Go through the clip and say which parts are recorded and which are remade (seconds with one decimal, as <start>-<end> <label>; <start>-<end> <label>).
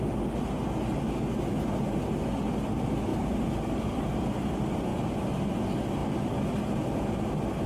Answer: 0.0-3.1 recorded; 3.1-3.6 remade; 3.6-4.9 recorded; 4.9-5.5 remade; 5.5-7.7 recorded